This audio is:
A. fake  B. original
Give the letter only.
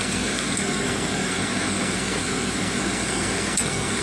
A